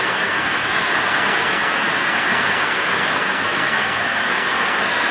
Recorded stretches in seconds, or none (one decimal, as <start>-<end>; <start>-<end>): none